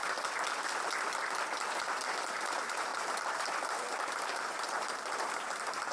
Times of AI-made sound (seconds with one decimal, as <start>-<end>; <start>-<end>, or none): 1.8-5.9